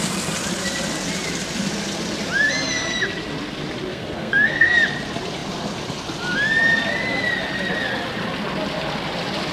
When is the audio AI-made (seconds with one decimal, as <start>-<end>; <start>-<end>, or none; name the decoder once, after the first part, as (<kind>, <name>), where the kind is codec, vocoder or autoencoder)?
3.9-4.7 (codec, SNAC)